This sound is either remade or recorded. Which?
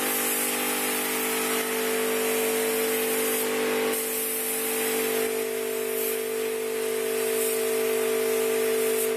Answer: recorded